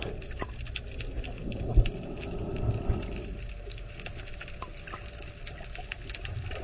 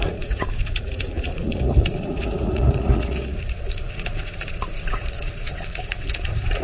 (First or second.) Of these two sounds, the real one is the first